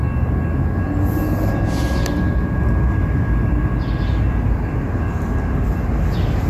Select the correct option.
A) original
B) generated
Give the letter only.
A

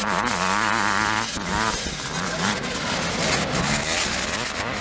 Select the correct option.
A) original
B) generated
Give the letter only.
A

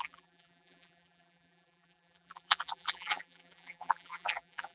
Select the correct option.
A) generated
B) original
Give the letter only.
A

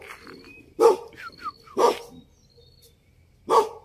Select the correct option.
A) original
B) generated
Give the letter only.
A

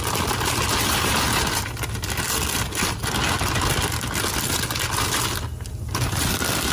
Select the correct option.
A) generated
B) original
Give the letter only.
B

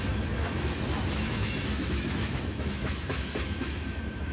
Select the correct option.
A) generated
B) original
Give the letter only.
A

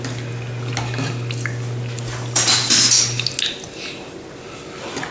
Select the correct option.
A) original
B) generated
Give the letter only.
A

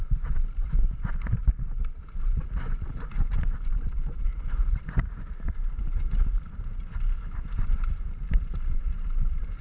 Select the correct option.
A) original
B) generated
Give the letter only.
B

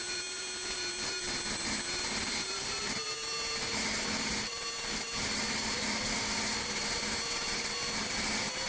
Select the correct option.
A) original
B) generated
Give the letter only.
A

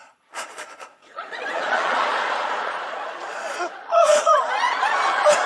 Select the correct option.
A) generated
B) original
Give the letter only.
A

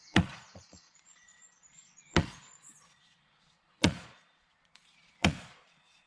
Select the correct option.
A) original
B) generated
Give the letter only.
B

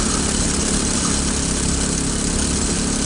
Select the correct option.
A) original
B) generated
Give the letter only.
A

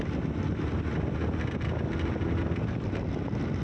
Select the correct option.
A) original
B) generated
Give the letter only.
A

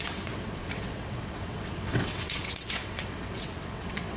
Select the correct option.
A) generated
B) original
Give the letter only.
A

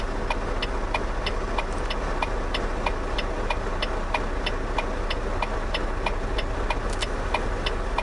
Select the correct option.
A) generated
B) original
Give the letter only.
B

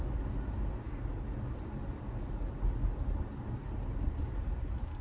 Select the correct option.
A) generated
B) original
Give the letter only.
B